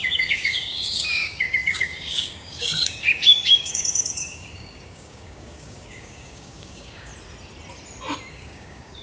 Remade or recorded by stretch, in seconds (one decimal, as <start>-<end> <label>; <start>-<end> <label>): 0.0-7.1 remade; 7.1-8.3 recorded; 8.3-9.0 remade